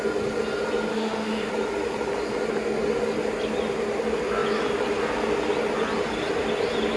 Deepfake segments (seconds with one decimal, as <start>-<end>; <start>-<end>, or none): 0.9-1.5

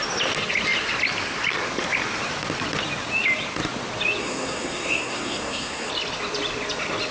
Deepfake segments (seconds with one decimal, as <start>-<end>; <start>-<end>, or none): 4.2-5.9

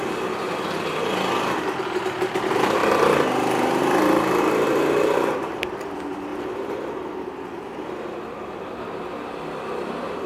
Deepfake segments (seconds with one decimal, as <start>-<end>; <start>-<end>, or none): 0.0-2.8; 3.8-6.3; 9.3-10.3

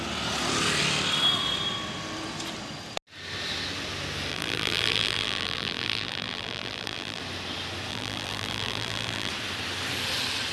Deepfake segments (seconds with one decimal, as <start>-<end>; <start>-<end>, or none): 4.3-7.2; 7.9-9.3

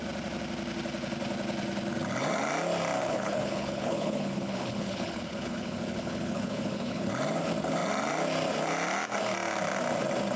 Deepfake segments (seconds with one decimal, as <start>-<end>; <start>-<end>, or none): 3.0-7.1

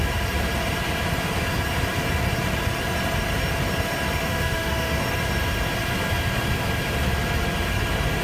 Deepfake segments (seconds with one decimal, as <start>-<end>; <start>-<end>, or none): 4.2-5.0